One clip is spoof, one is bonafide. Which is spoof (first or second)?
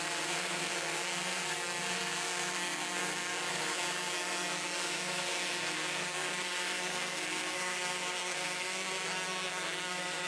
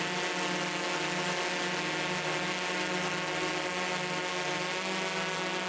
first